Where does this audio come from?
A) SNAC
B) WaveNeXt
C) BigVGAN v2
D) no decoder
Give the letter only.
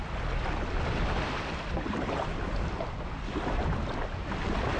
D